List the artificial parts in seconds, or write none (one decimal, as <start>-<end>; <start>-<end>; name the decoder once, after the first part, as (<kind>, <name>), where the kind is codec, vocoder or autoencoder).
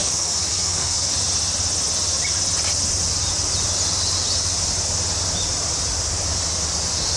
0.0-1.1 (codec, SNAC)